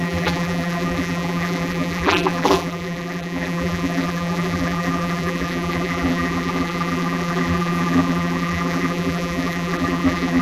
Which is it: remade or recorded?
remade